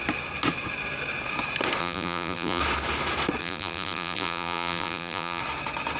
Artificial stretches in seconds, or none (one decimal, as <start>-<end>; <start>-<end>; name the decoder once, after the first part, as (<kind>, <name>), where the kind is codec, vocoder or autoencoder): 1.8-2.6 (vocoder, BigVGAN v2); 3.4-5.4